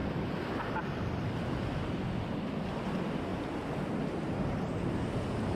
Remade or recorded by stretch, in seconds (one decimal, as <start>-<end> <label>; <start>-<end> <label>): 0.0-5.5 recorded